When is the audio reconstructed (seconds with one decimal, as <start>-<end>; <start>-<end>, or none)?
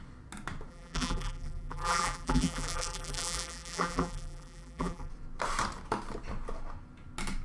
0.7-5.1